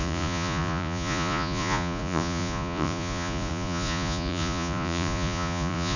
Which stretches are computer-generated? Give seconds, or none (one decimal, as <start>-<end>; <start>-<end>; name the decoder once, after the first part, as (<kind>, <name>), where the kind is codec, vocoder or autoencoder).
0.0-6.0 (vocoder, Vocos)